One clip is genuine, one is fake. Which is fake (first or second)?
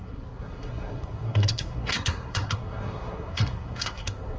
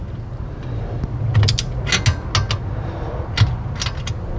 first